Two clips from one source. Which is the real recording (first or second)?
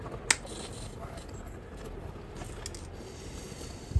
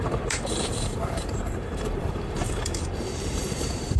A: first